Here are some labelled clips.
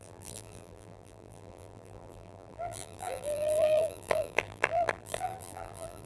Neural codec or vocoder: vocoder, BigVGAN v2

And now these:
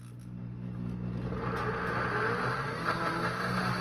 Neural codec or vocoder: none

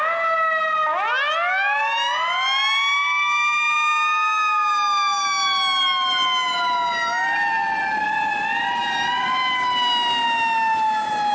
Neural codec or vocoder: none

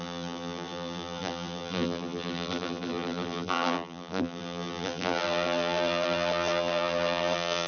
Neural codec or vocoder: vocoder, BigVGAN v2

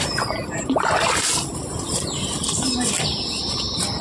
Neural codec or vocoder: none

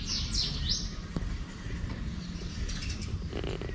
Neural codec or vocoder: vocoder, BigVGAN v2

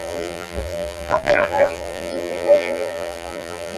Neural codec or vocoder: vocoder, BigVGAN v2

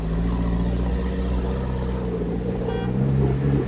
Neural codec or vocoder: none